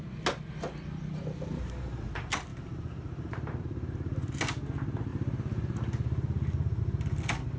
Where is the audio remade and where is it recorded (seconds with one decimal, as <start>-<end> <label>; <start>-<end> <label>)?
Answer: 0.0-1.5 recorded; 1.5-2.1 remade; 2.1-2.5 recorded; 2.5-4.4 remade; 4.4-5.1 recorded; 5.1-6.8 remade; 6.8-7.6 recorded